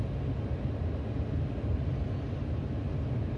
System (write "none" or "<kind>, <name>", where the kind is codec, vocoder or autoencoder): none